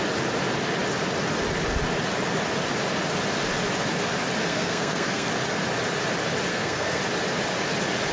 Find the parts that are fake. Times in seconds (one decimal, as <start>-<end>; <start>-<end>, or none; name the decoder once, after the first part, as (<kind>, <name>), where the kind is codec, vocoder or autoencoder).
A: 4.5-5.3 (codec, SNAC); 6.5-7.0